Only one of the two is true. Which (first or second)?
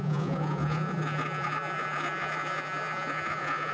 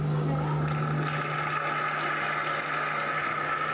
second